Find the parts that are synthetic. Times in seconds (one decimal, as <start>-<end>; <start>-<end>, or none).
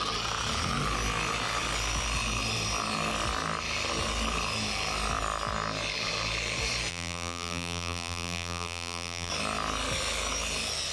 6.9-9.3